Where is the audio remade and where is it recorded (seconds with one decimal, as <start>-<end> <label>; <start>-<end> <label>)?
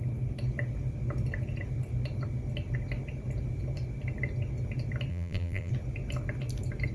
0.0-5.1 recorded; 5.1-5.7 remade; 5.7-6.9 recorded